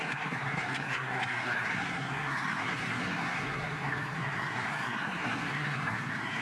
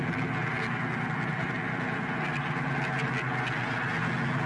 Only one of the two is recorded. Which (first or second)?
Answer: second